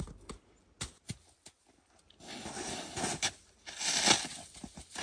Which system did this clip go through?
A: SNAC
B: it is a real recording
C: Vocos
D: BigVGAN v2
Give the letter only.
B